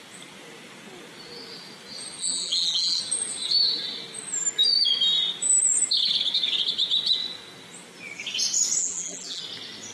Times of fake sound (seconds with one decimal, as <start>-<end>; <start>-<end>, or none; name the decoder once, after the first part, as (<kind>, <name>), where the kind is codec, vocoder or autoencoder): 2.2-3.0 (vocoder, BigVGAN v2); 8.8-9.4